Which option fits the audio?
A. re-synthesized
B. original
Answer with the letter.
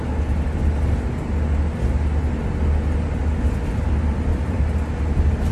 B